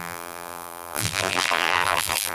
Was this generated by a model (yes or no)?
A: yes